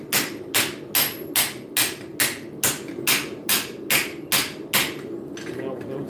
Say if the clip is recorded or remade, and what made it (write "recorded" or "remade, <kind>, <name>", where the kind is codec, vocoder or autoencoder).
recorded